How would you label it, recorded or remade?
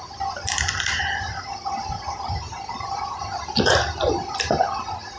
recorded